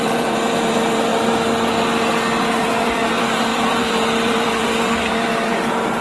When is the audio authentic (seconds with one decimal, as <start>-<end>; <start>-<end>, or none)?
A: 1.1-2.6